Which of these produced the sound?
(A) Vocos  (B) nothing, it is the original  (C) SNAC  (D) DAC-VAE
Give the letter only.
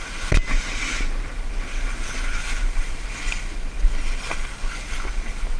B